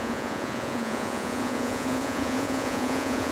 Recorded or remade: remade